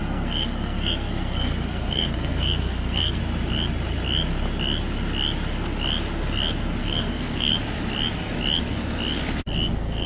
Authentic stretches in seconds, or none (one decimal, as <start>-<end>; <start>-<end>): 3.2-6.8; 7.5-9.7